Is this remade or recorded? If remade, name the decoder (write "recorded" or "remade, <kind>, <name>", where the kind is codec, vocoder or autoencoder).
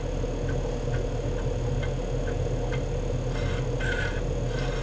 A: recorded